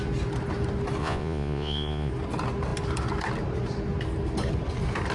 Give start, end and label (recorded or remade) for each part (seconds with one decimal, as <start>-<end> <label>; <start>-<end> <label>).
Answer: 0.0-1.0 recorded; 1.0-2.1 remade; 2.1-5.1 recorded